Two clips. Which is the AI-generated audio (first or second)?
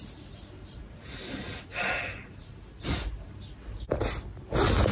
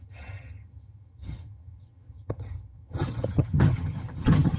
second